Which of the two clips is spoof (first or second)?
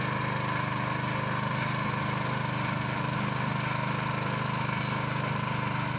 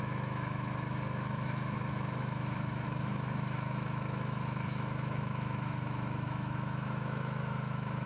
second